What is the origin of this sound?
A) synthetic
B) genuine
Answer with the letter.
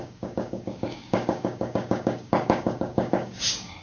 A